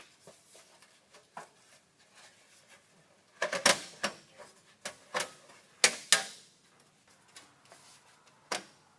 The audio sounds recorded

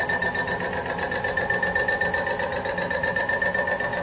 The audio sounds recorded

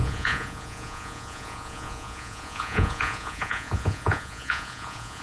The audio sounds remade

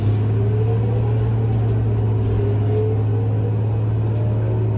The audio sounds recorded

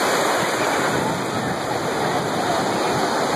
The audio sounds recorded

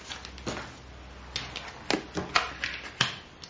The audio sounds recorded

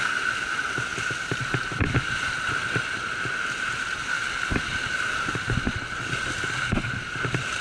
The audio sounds recorded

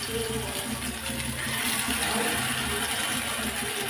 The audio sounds recorded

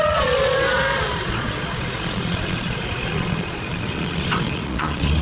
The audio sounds remade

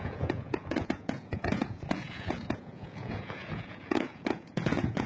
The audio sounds remade